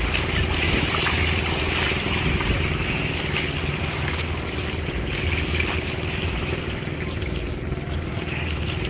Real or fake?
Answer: real